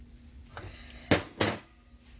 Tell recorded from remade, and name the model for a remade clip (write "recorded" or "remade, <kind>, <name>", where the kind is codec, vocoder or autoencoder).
recorded